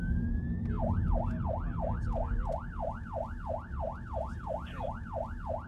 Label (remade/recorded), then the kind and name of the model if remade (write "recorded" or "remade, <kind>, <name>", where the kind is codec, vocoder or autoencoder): recorded